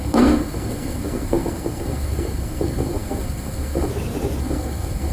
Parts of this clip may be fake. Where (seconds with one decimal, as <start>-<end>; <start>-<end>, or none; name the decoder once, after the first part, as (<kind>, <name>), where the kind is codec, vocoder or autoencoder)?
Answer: 0.0-3.9 (codec, SNAC); 4.4-5.1